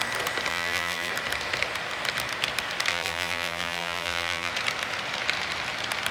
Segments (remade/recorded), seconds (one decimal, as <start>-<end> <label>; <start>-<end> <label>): 0.0-0.5 recorded; 0.5-1.1 remade; 1.1-2.9 recorded; 2.9-4.5 remade; 4.5-6.1 recorded